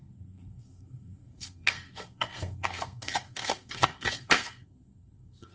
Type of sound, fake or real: fake